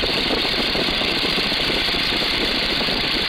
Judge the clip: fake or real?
fake